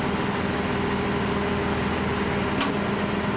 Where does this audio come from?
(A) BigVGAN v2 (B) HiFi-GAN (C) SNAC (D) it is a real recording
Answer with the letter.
D